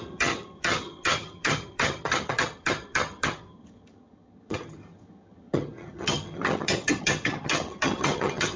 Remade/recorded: remade